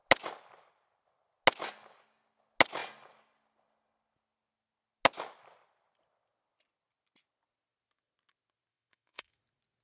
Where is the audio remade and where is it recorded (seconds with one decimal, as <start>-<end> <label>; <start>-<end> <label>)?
0.0-8.7 recorded; 8.7-9.4 remade; 9.4-9.8 recorded